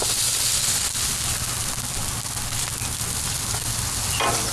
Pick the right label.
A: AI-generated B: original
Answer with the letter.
B